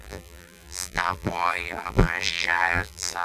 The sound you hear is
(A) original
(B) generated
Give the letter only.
B